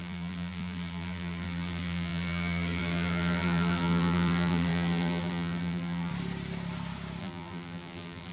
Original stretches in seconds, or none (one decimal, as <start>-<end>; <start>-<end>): 6.1-7.2